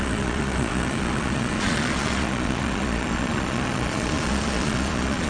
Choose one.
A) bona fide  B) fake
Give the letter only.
B